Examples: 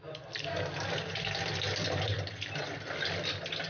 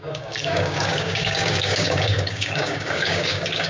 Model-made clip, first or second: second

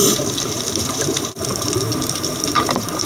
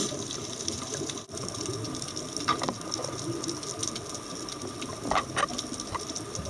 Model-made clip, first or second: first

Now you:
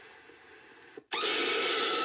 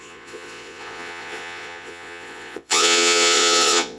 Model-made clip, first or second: second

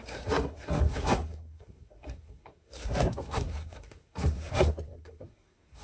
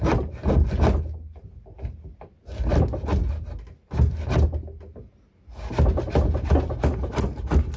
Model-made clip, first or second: first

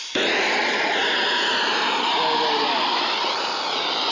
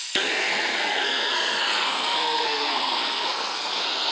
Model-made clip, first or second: second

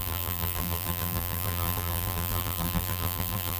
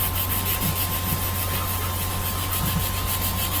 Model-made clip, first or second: first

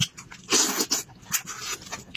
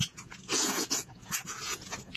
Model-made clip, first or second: second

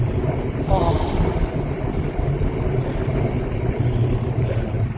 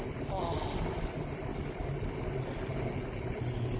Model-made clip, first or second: first